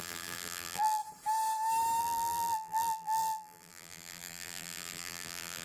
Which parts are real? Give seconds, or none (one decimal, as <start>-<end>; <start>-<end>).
1.0-2.0